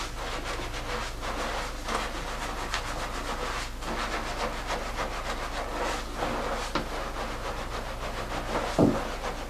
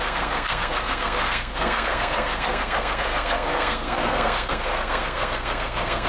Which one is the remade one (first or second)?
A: second